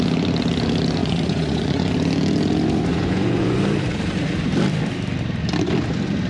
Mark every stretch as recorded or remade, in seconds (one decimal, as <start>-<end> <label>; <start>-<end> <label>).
0.0-1.0 recorded; 1.0-1.9 remade; 1.9-2.9 recorded; 2.9-3.6 remade; 3.6-6.3 recorded